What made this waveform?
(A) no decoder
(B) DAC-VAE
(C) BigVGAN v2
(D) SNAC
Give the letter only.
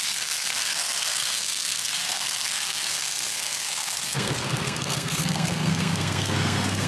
D